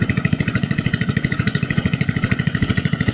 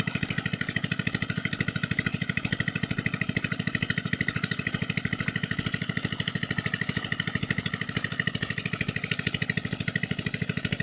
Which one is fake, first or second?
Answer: first